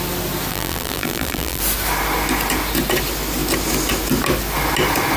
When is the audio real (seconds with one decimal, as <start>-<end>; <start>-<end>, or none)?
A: 0.0-0.5; 1.6-5.2